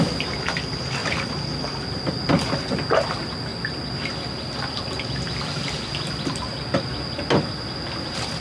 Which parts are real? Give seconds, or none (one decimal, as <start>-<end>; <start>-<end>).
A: 0.0-1.0; 2.0-8.4